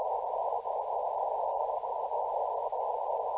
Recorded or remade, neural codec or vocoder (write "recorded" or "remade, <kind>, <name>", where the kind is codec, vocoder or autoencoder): recorded